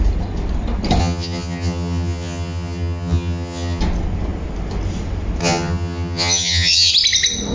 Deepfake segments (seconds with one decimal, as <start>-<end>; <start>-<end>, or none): 1.0-3.8; 5.4-6.9